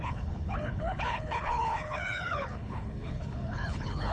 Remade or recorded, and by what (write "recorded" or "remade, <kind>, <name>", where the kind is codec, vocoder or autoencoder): remade, codec, HILCodec